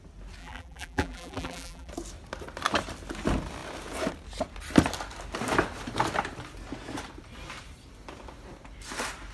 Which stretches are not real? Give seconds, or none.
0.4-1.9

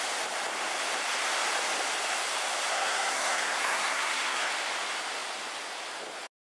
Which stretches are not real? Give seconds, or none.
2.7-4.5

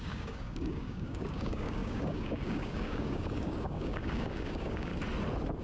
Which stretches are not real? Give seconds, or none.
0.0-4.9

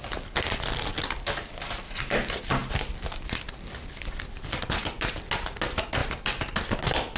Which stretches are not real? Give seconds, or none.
none

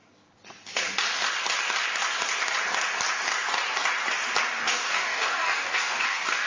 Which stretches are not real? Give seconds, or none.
4.6-6.5

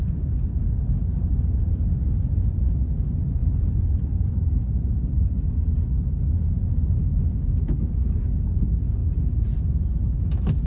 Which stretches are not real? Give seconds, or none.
3.4-4.6

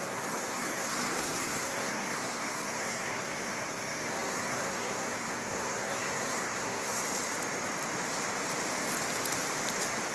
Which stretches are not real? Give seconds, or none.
0.0-7.0

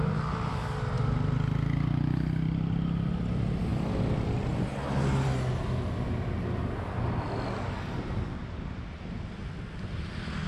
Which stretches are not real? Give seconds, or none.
none